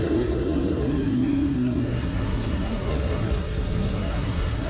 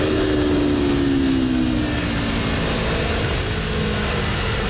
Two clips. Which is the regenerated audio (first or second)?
first